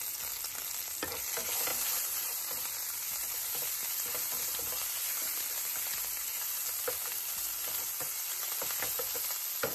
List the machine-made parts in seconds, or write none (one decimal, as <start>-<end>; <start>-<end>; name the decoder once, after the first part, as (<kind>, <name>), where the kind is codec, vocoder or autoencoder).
1.7-5.1 (vocoder, BigVGAN v2)